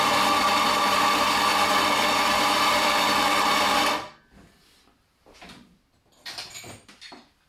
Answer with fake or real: real